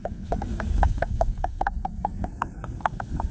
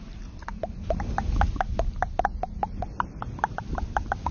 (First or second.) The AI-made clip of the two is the first